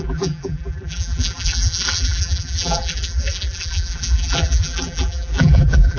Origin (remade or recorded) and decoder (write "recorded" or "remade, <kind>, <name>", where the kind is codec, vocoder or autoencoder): remade, vocoder, BigVGAN v2